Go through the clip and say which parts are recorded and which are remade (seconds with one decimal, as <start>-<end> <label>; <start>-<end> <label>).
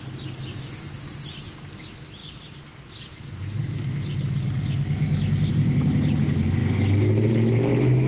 0.0-8.1 recorded